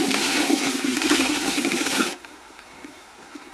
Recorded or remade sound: remade